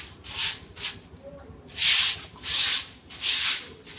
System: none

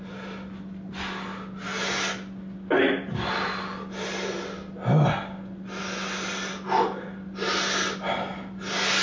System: none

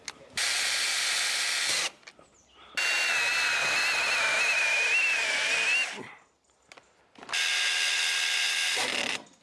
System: none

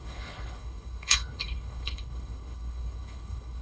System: codec, HILCodec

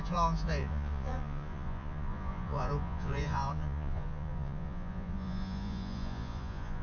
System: vocoder, Vocos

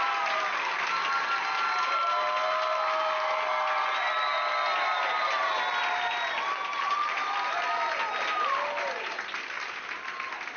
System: none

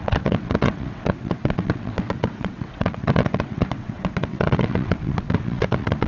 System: vocoder, WaveNeXt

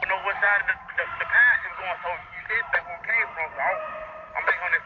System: none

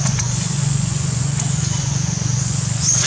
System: vocoder, Vocos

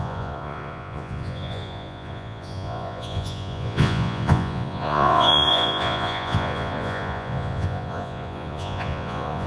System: vocoder, Vocos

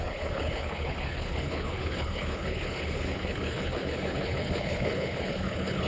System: codec, HILCodec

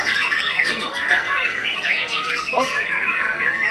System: codec, SNAC